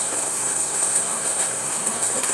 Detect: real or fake fake